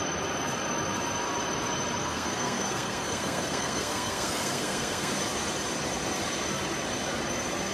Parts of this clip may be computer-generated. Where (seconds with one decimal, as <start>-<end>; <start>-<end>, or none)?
2.0-5.1